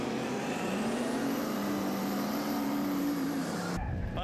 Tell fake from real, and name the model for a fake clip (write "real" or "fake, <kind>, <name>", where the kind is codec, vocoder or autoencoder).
fake, vocoder, BigVGAN v2